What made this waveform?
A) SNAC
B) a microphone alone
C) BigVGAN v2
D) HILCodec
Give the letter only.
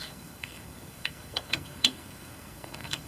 A